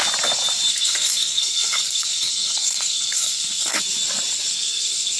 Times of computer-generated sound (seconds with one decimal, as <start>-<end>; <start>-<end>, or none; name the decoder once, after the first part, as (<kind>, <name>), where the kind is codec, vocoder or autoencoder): 0.7-3.8 (codec, SNAC); 4.5-5.2